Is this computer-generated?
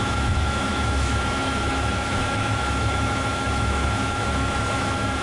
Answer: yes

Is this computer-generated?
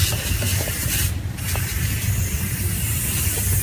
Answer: no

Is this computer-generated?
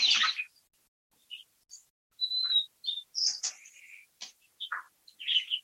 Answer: no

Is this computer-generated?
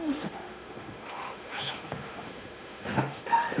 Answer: yes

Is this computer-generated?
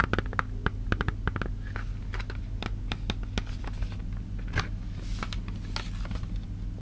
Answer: no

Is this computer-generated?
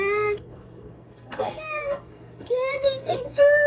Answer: yes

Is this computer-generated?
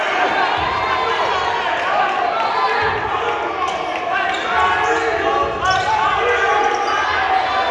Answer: no